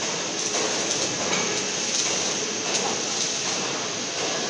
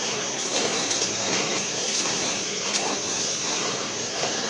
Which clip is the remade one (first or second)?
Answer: second